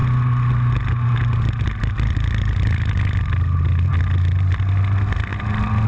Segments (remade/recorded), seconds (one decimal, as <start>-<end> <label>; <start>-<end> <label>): 0.0-5.9 recorded